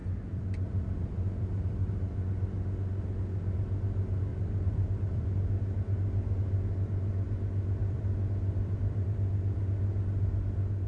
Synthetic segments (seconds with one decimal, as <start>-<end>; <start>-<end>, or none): 0.0-1.9; 4.3-5.2; 7.8-9.9